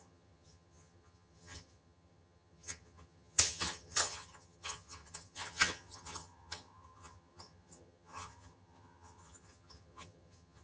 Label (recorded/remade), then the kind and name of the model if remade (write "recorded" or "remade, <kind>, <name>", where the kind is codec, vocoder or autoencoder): remade, vocoder, HiFi-GAN